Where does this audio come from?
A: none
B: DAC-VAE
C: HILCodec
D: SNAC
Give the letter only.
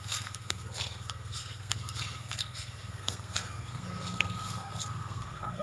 D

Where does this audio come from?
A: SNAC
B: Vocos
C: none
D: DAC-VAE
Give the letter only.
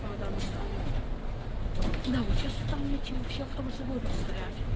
C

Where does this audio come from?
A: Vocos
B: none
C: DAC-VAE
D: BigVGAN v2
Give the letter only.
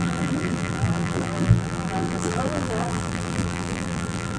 D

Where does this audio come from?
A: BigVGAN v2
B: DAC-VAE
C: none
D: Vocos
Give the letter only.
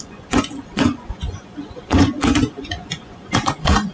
D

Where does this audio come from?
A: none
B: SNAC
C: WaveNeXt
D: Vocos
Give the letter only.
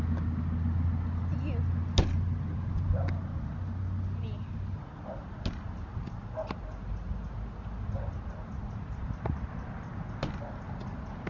A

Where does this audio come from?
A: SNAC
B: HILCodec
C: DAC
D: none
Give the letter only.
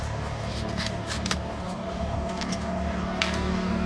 C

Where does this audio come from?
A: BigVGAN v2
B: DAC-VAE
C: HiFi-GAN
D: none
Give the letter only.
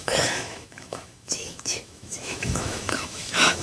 B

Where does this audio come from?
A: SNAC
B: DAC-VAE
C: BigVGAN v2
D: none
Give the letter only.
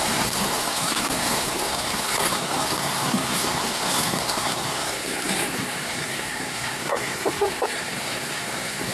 A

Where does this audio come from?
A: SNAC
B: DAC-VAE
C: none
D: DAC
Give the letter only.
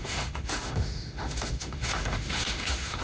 B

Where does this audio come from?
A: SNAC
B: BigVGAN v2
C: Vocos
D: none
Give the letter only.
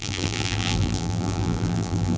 B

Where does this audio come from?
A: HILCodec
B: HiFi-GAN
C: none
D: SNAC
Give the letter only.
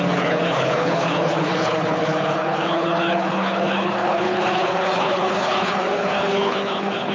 A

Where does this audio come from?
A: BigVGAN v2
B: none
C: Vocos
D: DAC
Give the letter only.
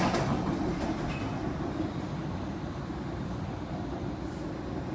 B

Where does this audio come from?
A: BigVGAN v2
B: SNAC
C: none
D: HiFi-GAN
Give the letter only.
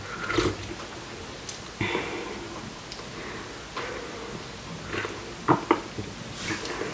C